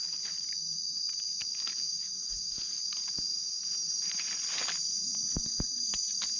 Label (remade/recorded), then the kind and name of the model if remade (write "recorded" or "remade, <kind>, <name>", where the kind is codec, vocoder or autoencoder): recorded